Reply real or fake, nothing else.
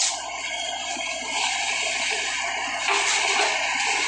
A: real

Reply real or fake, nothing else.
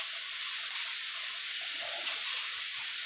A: real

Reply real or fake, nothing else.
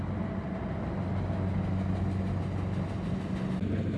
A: real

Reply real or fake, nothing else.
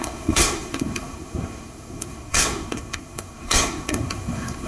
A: fake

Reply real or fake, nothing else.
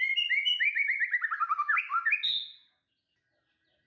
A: real